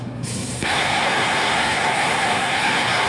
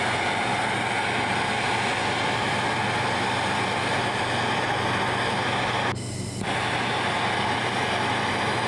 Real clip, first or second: second